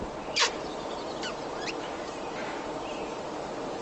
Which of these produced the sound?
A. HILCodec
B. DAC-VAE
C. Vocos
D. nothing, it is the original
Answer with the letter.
D